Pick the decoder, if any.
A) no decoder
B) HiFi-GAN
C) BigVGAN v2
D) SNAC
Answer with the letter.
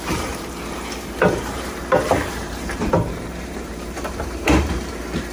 C